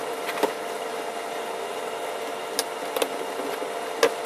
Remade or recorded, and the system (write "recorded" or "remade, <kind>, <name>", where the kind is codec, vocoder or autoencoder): recorded